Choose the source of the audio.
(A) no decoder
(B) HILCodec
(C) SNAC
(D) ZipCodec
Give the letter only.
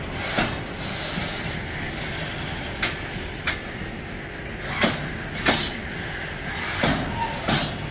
A